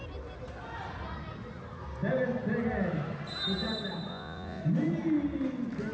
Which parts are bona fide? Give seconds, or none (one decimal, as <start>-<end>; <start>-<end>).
0.0-4.1; 4.6-5.9